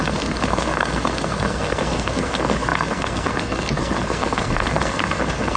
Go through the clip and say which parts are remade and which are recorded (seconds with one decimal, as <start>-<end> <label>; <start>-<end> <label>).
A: 0.0-5.6 remade